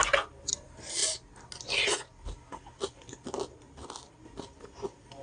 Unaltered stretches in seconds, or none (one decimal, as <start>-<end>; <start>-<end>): 0.0-5.2